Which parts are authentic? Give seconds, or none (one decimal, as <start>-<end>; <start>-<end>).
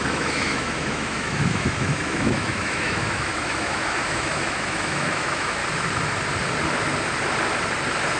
5.6-8.2